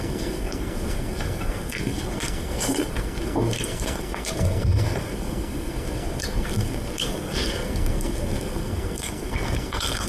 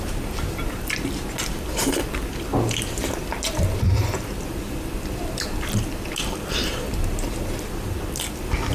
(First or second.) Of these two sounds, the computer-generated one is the first